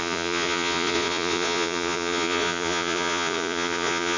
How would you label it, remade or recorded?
remade